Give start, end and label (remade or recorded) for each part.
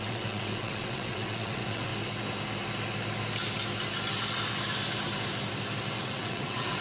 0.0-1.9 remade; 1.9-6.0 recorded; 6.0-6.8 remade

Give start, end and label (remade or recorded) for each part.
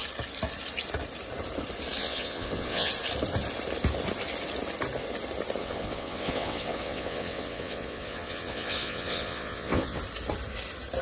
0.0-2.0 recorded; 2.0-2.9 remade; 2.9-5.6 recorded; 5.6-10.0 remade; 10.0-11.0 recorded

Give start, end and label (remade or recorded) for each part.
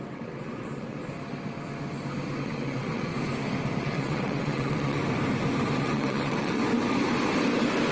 0.0-1.0 remade; 1.0-2.4 recorded; 2.4-3.1 remade; 3.1-3.8 recorded; 3.8-5.0 remade; 5.0-5.8 recorded; 5.8-6.6 remade; 6.6-7.9 recorded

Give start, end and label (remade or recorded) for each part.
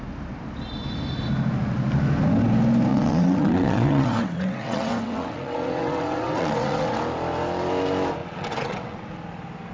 0.0-2.9 recorded; 2.9-7.0 remade; 7.0-8.2 recorded; 8.2-9.1 remade; 9.1-9.7 recorded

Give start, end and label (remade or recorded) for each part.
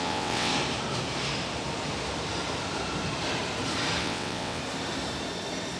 0.0-0.5 remade; 0.5-4.0 recorded; 4.0-4.6 remade; 4.6-5.8 recorded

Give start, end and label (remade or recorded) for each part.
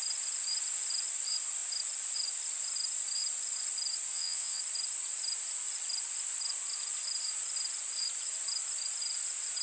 0.0-4.1 recorded; 4.1-4.6 remade; 4.6-9.6 recorded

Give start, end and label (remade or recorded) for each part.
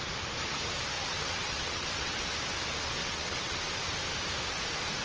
0.0-0.9 recorded; 0.9-2.3 remade; 2.3-3.0 recorded; 3.0-3.7 remade; 3.7-5.0 recorded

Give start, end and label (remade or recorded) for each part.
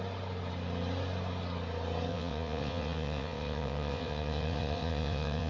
0.0-2.1 recorded; 2.1-5.5 remade